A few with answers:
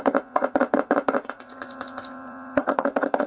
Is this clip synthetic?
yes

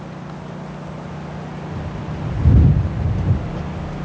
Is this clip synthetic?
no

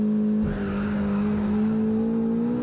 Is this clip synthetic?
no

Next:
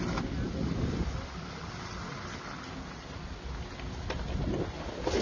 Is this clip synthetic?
no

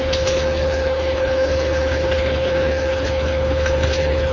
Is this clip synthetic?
yes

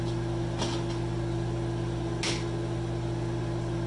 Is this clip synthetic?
no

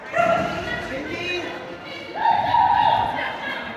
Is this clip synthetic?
no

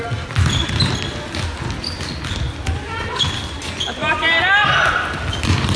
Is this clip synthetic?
no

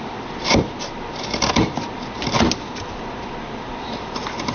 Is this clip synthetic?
yes